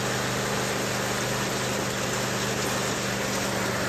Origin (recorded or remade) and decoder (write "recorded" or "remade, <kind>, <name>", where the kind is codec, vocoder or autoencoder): recorded